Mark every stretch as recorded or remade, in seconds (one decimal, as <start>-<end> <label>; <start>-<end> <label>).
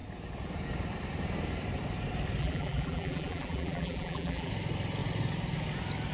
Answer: 0.0-2.4 recorded; 2.4-4.5 remade; 4.5-6.1 recorded